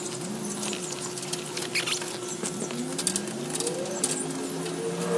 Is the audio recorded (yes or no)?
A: yes